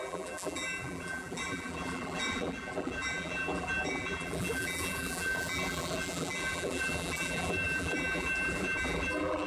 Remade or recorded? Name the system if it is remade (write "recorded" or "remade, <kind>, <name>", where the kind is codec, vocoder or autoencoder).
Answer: remade, vocoder, BigVGAN v2